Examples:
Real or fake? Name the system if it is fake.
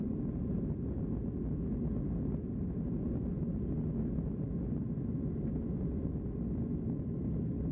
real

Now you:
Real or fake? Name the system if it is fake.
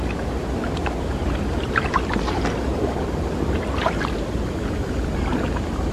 real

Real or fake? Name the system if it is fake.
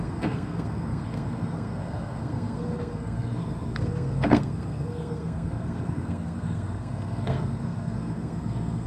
fake, codec, SNAC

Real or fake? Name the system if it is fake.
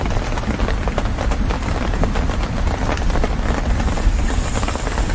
real